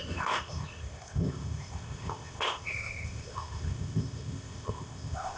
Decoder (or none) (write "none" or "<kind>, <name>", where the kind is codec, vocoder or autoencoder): codec, ZipCodec